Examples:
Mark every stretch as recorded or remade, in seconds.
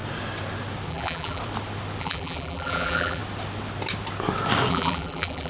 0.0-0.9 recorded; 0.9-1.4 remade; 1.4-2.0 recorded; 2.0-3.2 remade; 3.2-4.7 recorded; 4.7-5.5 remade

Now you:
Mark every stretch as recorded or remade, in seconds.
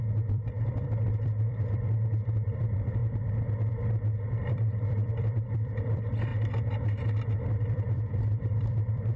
0.0-3.0 remade; 3.0-4.5 recorded; 4.5-6.3 remade; 6.3-7.4 recorded; 7.4-9.2 remade